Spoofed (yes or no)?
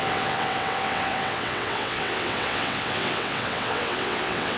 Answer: yes